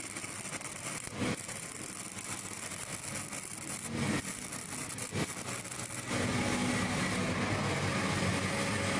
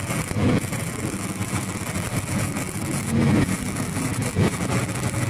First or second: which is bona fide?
first